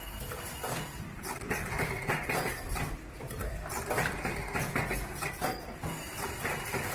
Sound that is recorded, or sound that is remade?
remade